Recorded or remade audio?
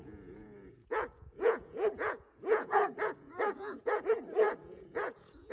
remade